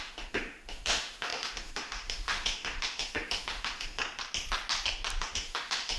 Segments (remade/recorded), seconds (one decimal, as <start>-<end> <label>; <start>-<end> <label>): 0.0-4.0 remade; 4.0-5.2 recorded; 5.2-6.0 remade